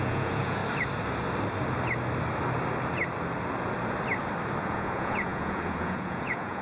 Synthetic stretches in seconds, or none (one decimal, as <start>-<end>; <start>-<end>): 0.0-0.6; 4.6-6.6